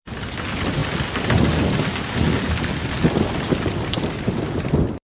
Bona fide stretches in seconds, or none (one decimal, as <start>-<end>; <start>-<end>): 0.8-2.8